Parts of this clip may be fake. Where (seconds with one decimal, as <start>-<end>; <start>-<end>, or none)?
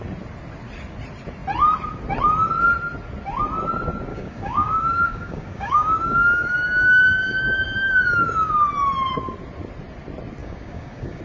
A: 4.1-8.5; 10.4-11.2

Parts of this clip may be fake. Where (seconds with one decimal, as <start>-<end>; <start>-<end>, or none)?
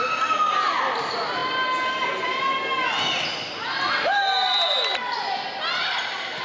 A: none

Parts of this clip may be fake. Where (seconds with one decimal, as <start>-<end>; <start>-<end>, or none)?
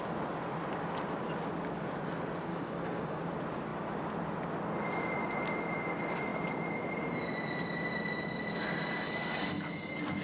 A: 2.5-3.2